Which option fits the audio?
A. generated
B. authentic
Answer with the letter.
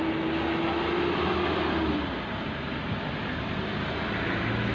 B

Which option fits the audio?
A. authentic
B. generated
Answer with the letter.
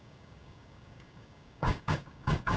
B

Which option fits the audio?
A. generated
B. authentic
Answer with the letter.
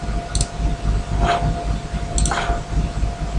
B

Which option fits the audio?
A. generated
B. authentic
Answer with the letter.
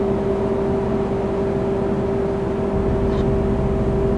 B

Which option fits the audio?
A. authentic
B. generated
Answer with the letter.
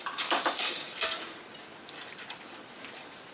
A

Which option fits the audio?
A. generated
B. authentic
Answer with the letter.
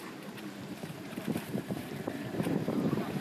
A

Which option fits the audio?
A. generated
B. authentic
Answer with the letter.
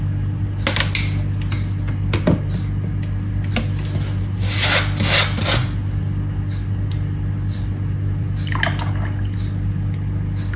B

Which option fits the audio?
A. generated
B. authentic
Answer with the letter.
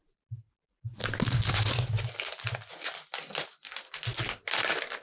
B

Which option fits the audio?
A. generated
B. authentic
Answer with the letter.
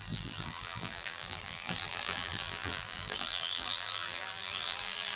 A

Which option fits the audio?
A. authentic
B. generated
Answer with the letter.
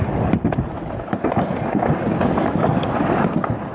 A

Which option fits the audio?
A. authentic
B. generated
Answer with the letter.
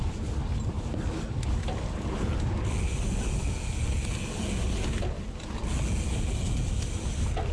A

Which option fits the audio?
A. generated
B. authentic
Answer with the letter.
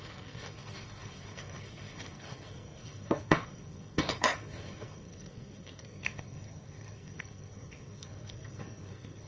A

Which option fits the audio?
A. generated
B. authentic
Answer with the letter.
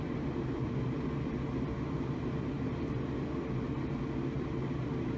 B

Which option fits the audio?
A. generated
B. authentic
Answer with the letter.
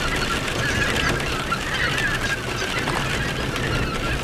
B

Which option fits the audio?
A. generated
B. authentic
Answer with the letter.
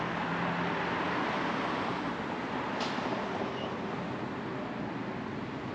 B